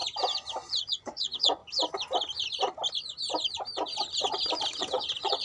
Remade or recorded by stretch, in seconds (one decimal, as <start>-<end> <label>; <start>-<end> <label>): 0.0-0.8 recorded; 0.8-1.6 remade; 1.6-4.8 recorded; 4.8-5.4 remade